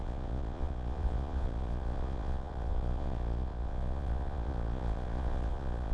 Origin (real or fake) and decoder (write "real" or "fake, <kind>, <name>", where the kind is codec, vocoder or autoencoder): fake, vocoder, Vocos